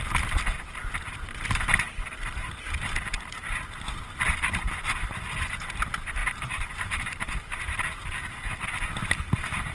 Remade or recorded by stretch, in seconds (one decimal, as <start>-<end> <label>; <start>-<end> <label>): 0.0-6.2 recorded; 6.2-7.5 remade; 7.5-9.7 recorded